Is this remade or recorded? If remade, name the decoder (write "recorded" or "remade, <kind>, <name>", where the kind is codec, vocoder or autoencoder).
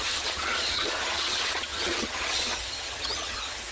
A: remade, vocoder, HiFi-GAN